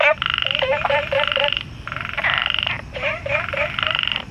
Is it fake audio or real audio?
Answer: fake